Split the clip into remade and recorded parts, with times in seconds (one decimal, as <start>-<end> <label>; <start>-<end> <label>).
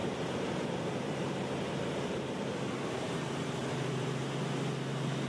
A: 0.0-3.1 remade; 3.1-3.6 recorded; 3.6-4.2 remade; 4.2-5.3 recorded